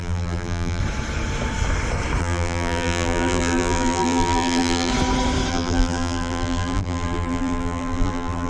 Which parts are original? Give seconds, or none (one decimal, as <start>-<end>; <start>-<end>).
0.8-2.2; 4.9-5.5